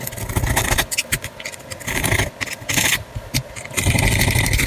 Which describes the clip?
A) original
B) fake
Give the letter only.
A